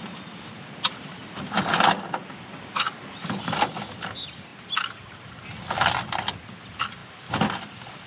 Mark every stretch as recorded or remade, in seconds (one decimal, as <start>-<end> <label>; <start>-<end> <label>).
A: 0.0-1.2 remade; 1.2-1.9 recorded; 1.9-8.1 remade

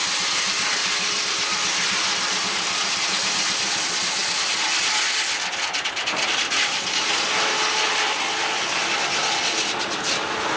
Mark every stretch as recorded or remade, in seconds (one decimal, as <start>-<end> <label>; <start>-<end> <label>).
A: 0.0-10.6 recorded

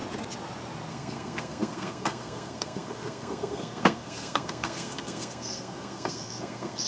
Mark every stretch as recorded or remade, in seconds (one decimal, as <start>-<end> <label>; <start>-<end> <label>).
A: 0.0-0.9 recorded; 0.9-6.9 remade

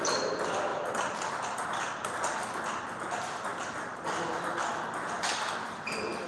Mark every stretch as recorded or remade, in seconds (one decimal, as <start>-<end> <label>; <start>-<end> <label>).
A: 0.0-6.3 recorded